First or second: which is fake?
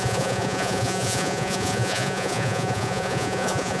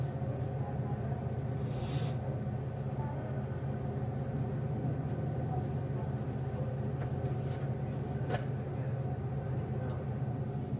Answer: first